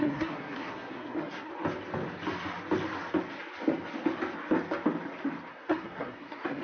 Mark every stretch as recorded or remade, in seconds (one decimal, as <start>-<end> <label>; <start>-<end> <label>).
0.0-1.5 remade; 1.5-5.5 recorded; 5.5-6.6 remade